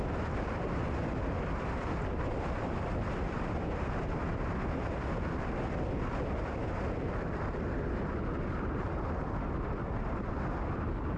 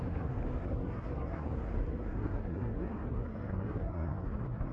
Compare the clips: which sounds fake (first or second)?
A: second